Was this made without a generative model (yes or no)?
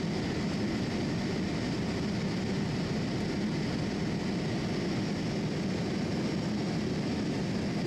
yes